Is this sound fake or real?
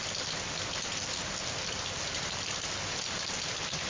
real